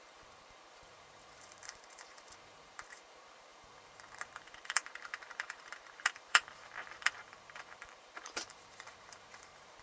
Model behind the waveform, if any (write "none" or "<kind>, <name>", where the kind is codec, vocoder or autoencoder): vocoder, BigVGAN v2